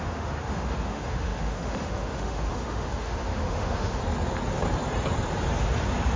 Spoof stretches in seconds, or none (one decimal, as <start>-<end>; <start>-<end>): 0.0-4.0

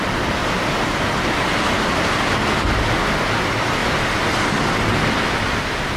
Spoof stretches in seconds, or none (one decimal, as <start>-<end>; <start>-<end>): none

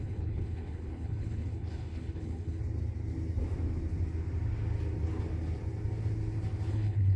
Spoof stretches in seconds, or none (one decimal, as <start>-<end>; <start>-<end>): 0.0-2.6; 6.7-7.2

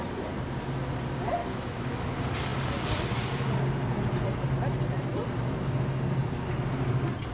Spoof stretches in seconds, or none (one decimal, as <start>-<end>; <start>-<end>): 1.4-2.1

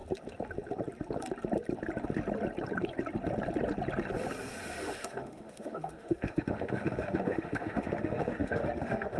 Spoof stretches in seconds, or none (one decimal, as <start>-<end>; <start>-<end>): 4.5-9.2